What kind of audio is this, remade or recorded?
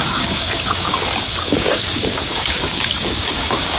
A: remade